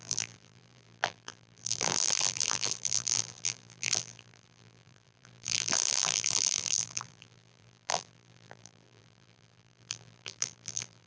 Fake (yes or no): yes